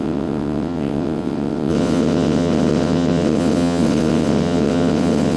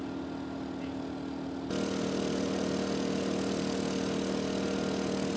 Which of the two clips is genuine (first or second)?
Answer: second